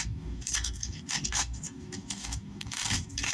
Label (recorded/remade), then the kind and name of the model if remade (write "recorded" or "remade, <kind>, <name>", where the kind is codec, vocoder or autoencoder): remade, codec, DAC